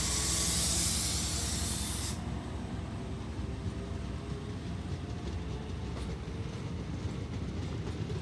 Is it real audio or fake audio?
real